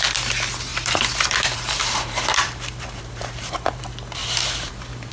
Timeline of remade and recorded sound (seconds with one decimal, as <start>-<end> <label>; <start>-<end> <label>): 0.0-0.7 recorded; 0.7-3.8 remade; 3.8-4.2 recorded; 4.2-5.1 remade